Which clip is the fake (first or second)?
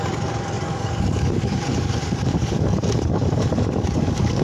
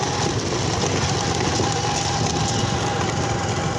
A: first